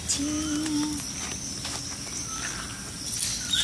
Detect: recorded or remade recorded